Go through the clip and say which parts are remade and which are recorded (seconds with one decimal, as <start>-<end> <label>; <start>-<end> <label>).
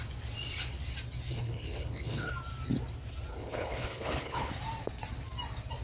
0.0-1.3 recorded; 1.3-2.3 remade; 2.3-3.3 recorded; 3.3-4.5 remade; 4.5-5.8 recorded